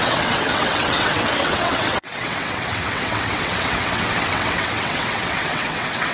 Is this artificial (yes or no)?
yes